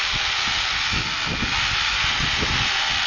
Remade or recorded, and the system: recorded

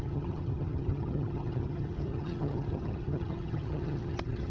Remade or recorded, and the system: remade, vocoder, HiFi-GAN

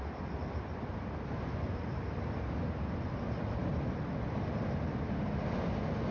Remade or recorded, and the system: recorded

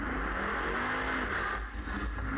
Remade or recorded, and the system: recorded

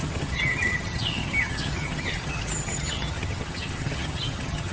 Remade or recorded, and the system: remade, vocoder, HiFi-GAN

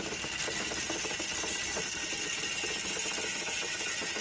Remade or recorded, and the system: recorded